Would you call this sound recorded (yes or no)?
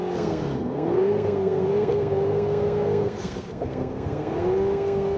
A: no